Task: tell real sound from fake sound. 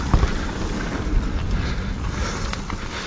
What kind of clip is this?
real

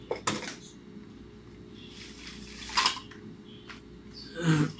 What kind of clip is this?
real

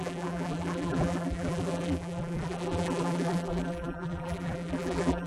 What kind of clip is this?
fake